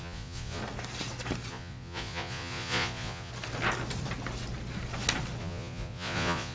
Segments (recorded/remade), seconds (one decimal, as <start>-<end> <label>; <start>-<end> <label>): 0.0-0.6 remade; 0.6-1.5 recorded; 1.5-3.3 remade; 3.3-5.4 recorded; 5.4-6.5 remade

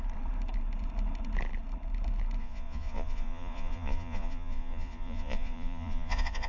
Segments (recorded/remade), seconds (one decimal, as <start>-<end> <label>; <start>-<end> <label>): 0.0-2.4 recorded; 2.4-6.5 remade

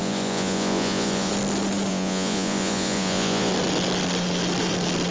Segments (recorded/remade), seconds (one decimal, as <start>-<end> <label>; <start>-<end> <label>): 0.0-1.3 remade; 1.3-1.9 recorded; 1.9-3.5 remade; 3.5-5.1 recorded

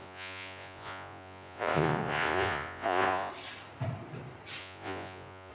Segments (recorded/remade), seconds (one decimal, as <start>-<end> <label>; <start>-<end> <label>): 0.0-3.3 remade; 3.3-4.6 recorded; 4.6-5.5 remade

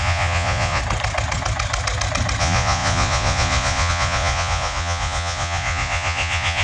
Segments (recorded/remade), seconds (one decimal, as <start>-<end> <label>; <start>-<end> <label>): 0.0-0.8 remade; 0.8-2.4 recorded; 2.4-6.6 remade

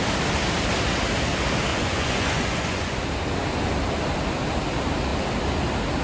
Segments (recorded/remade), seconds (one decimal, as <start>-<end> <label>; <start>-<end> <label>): 0.0-1.7 recorded; 1.7-3.0 remade; 3.0-6.0 recorded

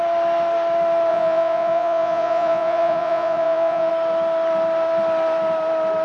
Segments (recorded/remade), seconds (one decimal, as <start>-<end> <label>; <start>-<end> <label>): 0.0-1.1 recorded; 1.1-3.9 remade; 3.9-6.0 recorded